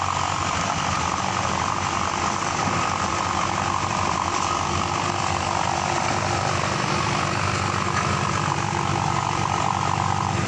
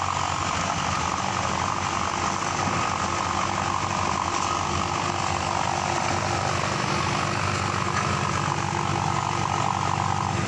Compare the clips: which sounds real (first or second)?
second